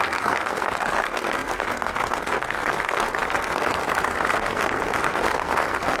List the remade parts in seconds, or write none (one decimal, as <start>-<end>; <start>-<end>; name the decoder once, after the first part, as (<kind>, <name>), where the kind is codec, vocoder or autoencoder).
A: 0.0-6.0 (codec, SNAC)